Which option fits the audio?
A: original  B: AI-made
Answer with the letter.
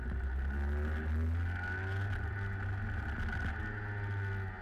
A